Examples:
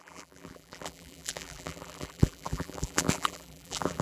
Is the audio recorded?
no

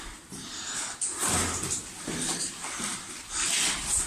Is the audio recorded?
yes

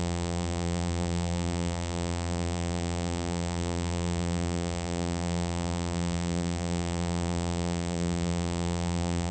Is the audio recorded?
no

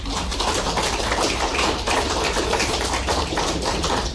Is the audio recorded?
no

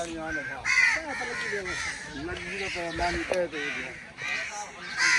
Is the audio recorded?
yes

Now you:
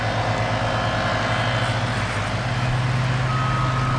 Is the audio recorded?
yes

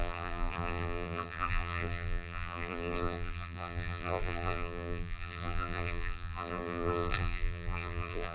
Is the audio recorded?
no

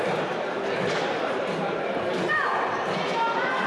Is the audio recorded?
no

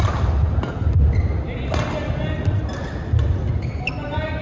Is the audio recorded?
yes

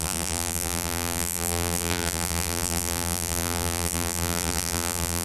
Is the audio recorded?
no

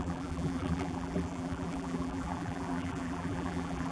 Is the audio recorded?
no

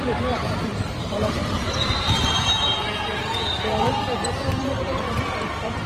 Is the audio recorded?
no